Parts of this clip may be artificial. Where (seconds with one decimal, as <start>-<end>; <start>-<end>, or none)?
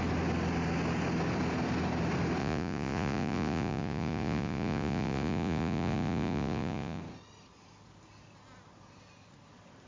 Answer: 2.4-7.0